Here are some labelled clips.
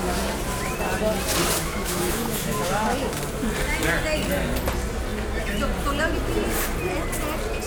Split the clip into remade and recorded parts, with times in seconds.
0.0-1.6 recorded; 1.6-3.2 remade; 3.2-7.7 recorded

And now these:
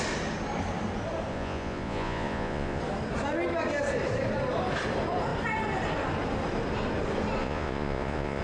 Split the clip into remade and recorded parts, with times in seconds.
0.0-1.3 recorded; 1.3-2.8 remade; 2.8-7.4 recorded; 7.4-8.4 remade

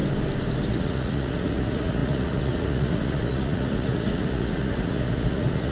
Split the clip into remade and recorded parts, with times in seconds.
0.0-0.7 recorded; 0.7-5.7 remade

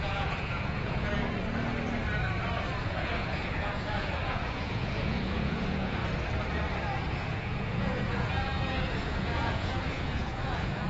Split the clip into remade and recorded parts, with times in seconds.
0.0-1.1 remade; 1.1-2.8 recorded; 2.8-6.0 remade; 6.0-7.1 recorded; 7.1-10.9 remade

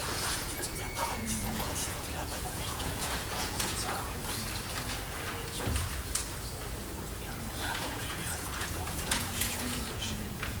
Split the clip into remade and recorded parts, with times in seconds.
0.0-4.2 remade; 4.2-5.5 recorded; 5.5-6.2 remade; 6.2-7.7 recorded; 7.7-10.6 remade